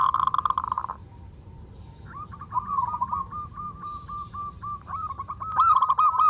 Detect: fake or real fake